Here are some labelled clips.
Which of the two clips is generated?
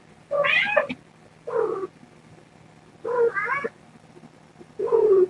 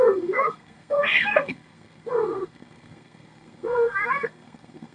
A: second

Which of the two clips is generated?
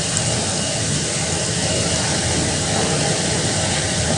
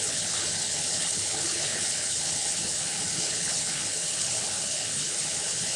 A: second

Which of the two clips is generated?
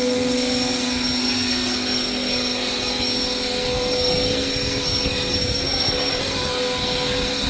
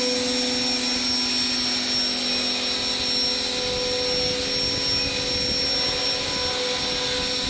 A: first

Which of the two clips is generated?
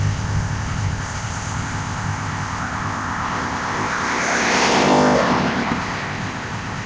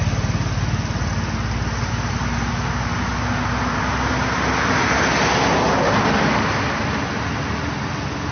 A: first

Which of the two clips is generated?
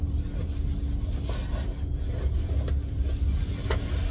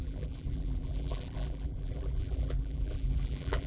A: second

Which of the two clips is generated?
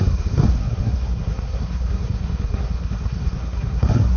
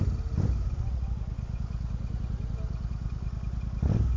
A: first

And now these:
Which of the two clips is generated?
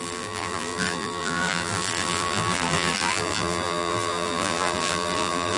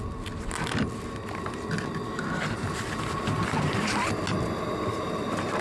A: first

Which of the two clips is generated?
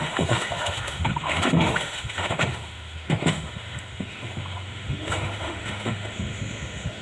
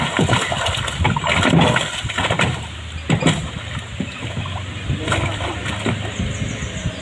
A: first